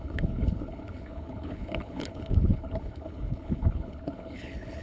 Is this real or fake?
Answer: fake